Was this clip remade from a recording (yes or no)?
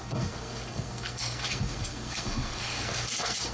yes